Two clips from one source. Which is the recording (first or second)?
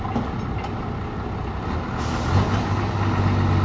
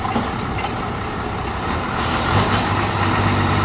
first